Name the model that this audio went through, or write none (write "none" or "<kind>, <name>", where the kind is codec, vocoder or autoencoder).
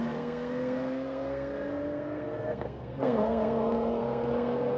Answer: codec, SNAC